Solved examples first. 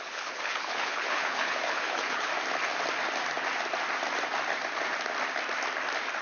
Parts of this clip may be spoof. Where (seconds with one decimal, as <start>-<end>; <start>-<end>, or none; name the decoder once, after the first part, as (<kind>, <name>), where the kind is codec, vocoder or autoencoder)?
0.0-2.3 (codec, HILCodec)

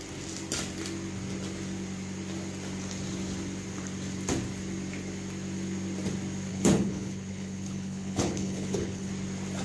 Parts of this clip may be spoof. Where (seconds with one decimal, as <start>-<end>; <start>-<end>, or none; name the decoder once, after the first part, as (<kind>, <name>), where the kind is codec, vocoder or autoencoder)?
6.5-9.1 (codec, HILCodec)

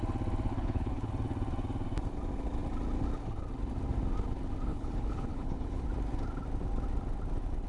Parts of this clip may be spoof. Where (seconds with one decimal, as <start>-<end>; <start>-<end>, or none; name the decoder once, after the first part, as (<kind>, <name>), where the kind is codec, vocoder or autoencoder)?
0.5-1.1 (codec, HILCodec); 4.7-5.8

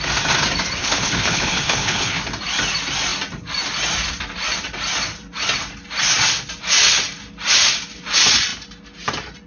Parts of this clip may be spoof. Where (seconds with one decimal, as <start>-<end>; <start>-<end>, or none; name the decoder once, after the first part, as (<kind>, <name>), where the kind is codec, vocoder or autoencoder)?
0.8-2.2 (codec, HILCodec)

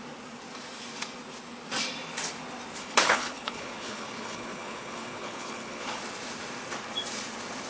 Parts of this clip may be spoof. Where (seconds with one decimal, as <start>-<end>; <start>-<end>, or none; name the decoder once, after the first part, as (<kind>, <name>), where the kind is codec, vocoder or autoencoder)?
2.8-6.0 (codec, HILCodec)